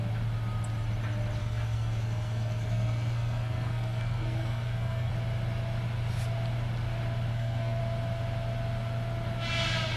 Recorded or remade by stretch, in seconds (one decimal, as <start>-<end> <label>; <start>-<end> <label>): 0.0-1.4 recorded; 1.4-5.1 remade; 5.1-7.3 recorded; 7.3-7.8 remade; 7.8-10.0 recorded